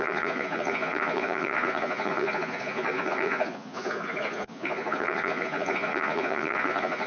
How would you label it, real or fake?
fake